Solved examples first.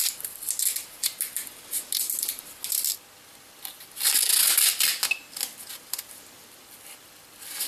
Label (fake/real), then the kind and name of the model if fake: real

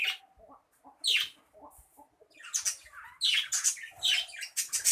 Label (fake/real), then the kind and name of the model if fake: real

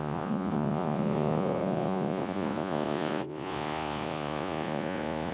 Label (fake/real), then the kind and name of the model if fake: fake, vocoder, Vocos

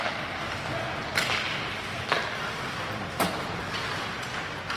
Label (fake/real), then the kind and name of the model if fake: real